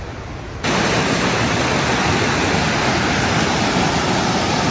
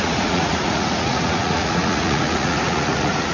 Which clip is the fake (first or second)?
second